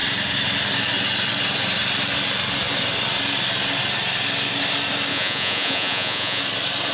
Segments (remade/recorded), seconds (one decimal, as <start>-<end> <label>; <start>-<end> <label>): 0.0-5.1 recorded; 5.1-6.4 remade; 6.4-6.9 recorded